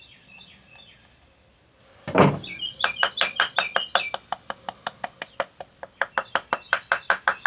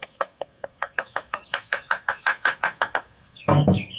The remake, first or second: second